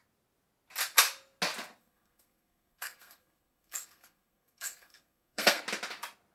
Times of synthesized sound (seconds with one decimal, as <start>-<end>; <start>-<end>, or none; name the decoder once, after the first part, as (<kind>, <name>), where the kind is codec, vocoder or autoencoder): 1.8-5.6 (codec, SNAC)